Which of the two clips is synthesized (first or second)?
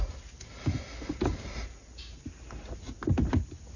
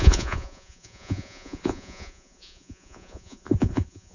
second